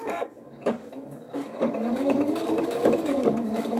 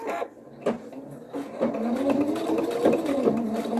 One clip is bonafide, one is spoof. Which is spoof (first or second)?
first